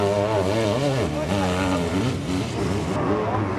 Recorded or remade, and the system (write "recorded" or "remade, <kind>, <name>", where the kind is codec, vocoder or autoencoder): recorded